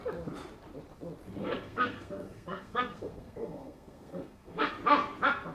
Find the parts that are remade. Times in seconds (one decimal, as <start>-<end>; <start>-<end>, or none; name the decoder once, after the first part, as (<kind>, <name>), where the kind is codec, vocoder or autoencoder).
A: 1.4-4.7 (codec, SNAC)